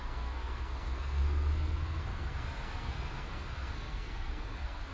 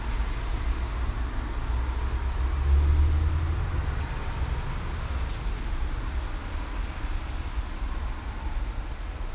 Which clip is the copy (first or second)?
first